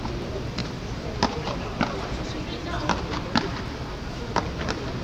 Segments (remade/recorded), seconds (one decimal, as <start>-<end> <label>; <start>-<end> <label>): 0.0-0.6 recorded; 0.6-2.3 remade; 2.3-5.0 recorded